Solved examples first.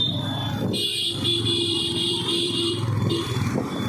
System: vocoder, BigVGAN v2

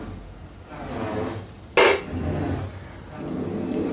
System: none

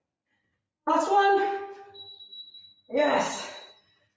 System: vocoder, BigVGAN v2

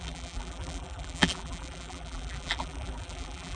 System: vocoder, BigVGAN v2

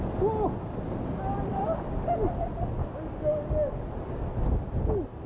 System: none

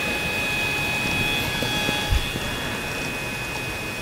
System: none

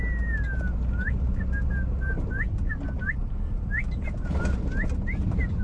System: none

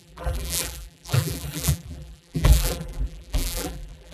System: vocoder, BigVGAN v2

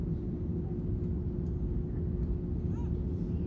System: none